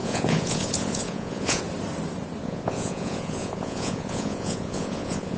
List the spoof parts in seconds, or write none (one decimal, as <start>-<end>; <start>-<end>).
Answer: 0.0-1.6; 2.4-5.4